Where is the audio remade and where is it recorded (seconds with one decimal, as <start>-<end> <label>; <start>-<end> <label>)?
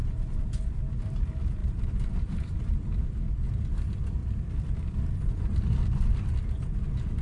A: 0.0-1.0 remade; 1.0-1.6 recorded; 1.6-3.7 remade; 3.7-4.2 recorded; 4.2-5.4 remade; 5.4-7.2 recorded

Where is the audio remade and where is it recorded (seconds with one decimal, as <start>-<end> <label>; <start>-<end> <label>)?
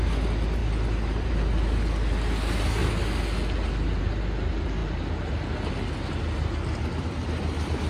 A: 0.0-0.6 recorded; 0.6-1.3 remade; 1.3-7.9 recorded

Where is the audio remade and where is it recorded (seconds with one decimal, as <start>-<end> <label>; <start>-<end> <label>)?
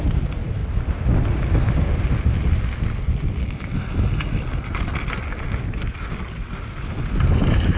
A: 0.0-7.8 recorded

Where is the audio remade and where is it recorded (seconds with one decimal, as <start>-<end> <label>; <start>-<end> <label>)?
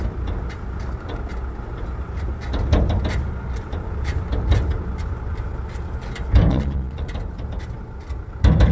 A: 0.0-6.5 recorded; 6.5-7.1 remade; 7.1-8.7 recorded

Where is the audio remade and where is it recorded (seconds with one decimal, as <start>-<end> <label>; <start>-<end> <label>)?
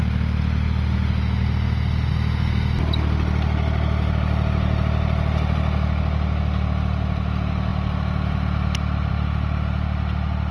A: 0.0-10.5 recorded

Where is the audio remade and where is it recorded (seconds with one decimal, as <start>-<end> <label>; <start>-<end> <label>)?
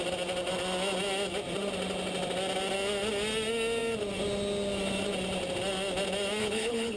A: 0.0-6.4 recorded; 6.4-7.0 remade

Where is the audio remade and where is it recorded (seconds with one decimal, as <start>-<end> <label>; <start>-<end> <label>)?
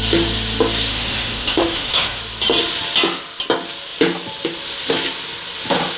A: 0.0-0.9 recorded; 0.9-2.2 remade; 2.2-6.0 recorded